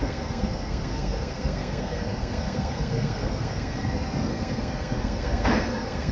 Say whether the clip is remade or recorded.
remade